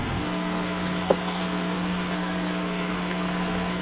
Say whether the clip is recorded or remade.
remade